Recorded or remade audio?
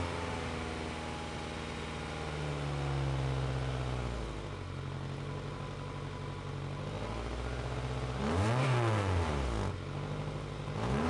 recorded